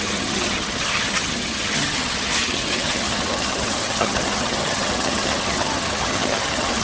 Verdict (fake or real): fake